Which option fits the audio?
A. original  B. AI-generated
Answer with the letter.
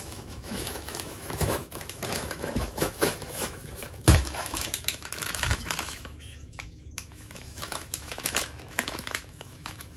B